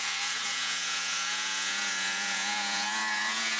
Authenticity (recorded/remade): remade